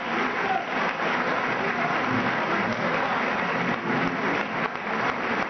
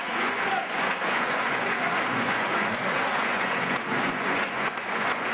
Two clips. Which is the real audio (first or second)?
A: first